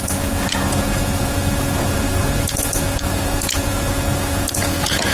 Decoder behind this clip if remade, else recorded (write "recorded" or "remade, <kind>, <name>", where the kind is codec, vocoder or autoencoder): remade, vocoder, Vocos